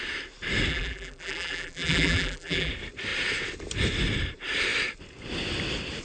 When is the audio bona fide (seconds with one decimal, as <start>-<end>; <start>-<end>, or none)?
0.0-0.7; 2.7-6.0